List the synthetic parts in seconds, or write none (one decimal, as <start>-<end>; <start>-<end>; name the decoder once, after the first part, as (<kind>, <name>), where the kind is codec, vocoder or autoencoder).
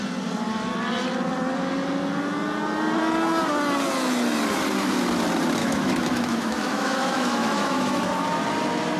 5.6-8.0 (autoencoder, DAC-VAE)